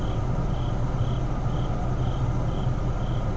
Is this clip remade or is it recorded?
recorded